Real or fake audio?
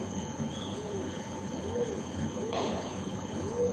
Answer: fake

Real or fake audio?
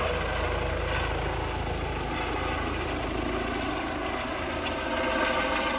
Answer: real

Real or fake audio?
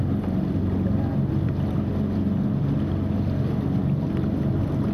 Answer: real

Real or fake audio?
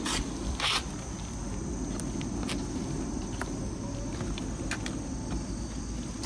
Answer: real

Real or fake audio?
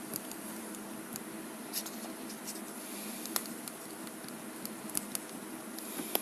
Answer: real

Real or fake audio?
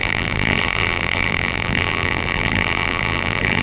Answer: fake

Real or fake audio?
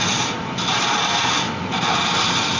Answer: real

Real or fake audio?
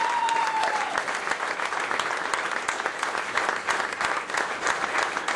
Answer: real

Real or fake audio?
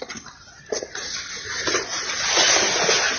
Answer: real